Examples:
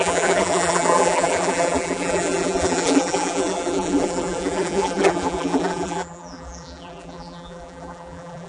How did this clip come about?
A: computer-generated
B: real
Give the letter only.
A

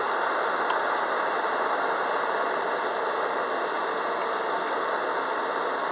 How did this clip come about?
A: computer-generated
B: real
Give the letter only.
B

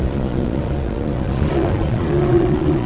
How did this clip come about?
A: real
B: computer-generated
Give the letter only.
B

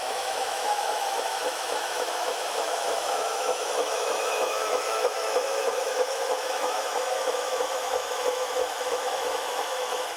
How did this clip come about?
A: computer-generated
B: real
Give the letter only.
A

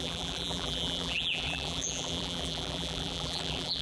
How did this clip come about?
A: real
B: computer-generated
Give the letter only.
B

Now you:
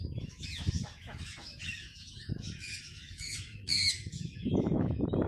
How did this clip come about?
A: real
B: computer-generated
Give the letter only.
B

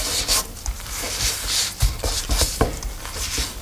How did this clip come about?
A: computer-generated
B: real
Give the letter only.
A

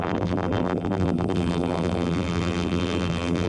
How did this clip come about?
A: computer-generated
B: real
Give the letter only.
A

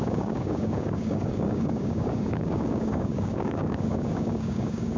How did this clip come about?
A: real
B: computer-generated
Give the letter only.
B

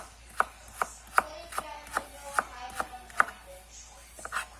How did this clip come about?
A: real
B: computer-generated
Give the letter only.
A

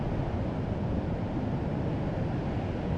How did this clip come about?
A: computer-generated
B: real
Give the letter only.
B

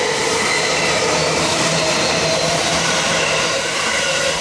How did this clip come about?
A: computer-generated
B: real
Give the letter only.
A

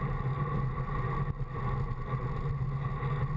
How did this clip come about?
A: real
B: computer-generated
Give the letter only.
A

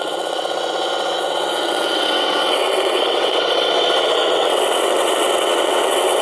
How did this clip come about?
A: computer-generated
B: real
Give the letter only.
A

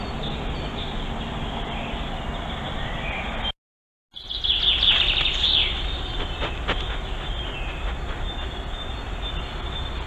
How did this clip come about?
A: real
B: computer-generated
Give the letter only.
A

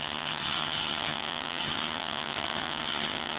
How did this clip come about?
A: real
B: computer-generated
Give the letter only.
B